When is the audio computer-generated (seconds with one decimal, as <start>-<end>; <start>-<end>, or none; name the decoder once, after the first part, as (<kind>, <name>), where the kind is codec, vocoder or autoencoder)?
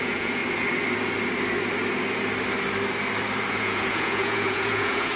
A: 0.0-0.4 (vocoder, Vocos); 3.5-5.2